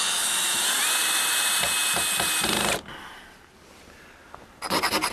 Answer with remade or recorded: recorded